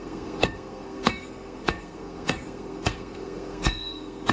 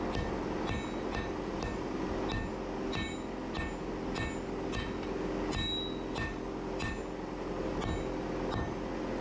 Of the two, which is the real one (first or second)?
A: second